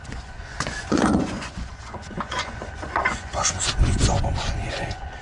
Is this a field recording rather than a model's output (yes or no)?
no